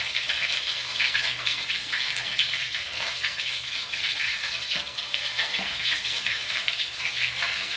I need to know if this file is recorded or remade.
remade